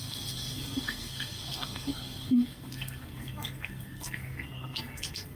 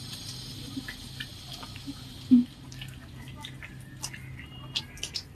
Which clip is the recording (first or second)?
second